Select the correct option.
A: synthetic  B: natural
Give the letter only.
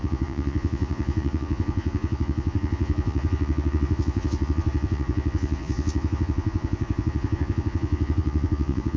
A